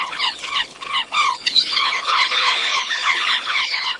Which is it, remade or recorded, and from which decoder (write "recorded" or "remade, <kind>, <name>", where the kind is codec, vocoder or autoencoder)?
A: remade, codec, HILCodec